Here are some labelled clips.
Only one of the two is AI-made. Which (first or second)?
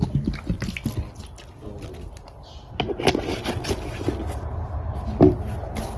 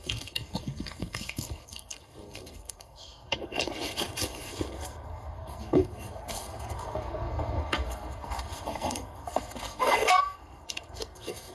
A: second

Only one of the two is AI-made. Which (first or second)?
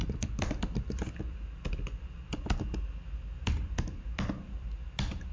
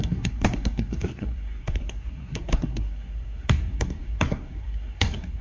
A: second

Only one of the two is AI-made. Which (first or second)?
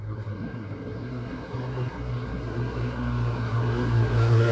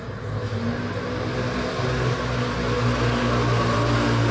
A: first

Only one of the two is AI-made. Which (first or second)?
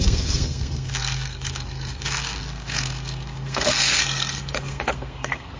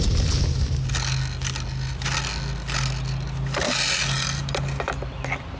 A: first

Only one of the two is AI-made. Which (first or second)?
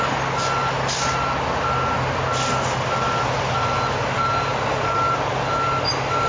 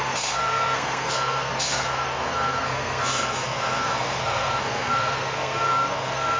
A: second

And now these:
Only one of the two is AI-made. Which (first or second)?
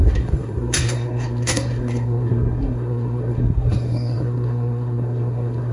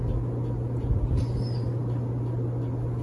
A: first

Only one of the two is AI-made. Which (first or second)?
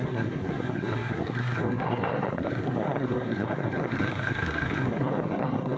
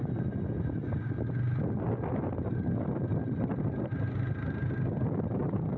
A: first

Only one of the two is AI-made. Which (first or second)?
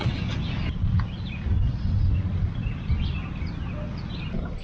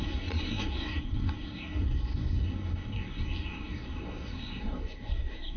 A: second